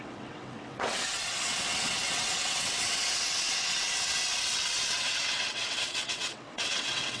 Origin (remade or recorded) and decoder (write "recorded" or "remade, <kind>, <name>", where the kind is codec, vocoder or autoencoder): remade, vocoder, WaveNeXt